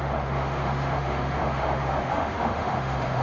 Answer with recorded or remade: remade